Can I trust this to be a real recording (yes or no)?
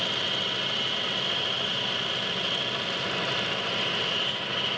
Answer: yes